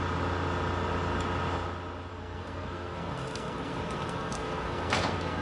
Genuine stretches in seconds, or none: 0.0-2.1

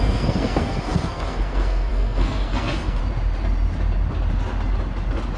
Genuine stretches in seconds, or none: 3.0-5.4

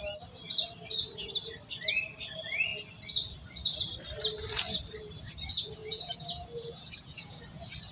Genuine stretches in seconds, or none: 0.0-5.8; 7.4-7.9

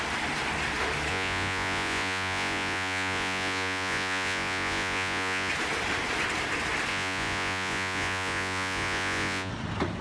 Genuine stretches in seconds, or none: 0.0-1.1; 5.5-6.9; 9.5-10.0

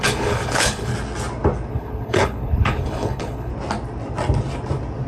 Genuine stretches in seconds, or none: 0.9-1.7; 3.5-5.1